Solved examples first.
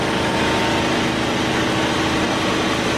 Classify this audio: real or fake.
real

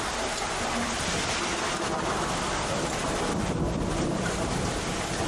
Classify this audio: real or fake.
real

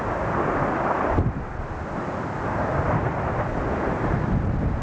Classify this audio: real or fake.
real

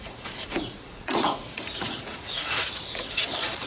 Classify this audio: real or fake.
fake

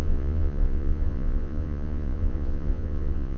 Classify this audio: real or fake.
fake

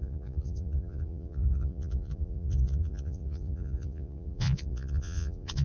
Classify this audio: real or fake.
fake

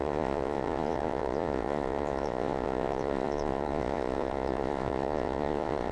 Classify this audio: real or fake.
fake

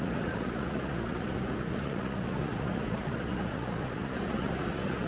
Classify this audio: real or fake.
fake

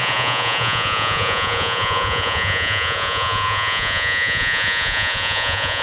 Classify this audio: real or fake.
fake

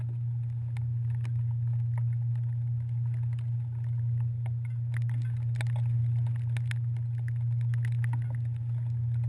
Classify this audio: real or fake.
real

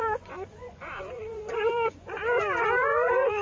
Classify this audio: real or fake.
fake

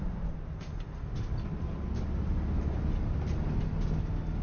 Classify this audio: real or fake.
real